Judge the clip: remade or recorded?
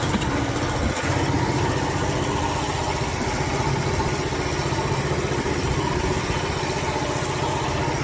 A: recorded